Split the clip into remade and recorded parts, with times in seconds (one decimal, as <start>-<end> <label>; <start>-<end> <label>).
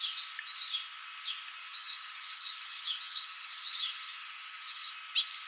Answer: 0.0-1.6 recorded; 1.6-4.9 remade; 4.9-5.5 recorded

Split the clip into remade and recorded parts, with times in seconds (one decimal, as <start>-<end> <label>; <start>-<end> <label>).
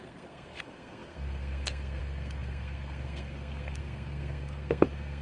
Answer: 0.0-5.2 remade